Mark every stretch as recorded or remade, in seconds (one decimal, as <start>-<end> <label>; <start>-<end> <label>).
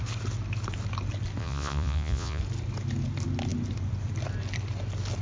0.0-1.4 recorded; 1.4-2.4 remade; 2.4-5.2 recorded